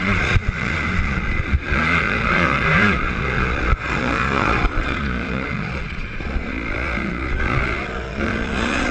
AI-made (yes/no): yes